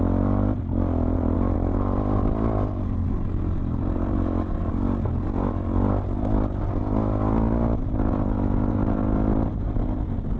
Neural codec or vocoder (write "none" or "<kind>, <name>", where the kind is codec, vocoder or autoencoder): none